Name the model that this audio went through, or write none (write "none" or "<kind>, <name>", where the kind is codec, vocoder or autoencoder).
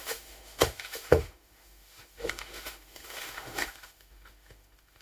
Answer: autoencoder, DAC-VAE